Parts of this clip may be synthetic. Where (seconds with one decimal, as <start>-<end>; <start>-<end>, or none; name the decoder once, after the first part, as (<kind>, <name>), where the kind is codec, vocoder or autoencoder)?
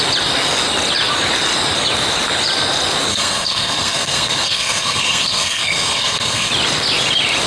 3.1-6.5 (codec, SNAC)